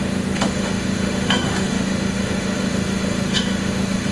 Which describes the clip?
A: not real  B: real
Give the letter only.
A